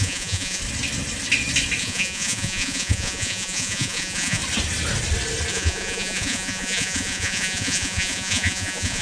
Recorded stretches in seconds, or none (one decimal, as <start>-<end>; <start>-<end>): 0.6-1.8; 4.4-5.5